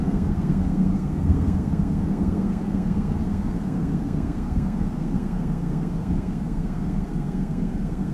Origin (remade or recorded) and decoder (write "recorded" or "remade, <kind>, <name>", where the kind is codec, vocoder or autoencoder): remade, codec, SNAC